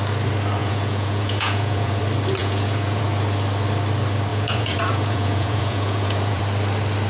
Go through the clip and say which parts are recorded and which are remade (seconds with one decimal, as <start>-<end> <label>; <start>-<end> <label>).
0.0-0.6 recorded; 0.6-2.0 remade; 2.0-2.4 recorded; 2.4-3.0 remade; 3.0-4.3 recorded; 4.3-6.4 remade; 6.4-7.1 recorded